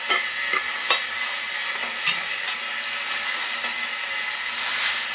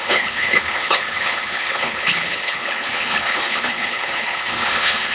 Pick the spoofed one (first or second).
second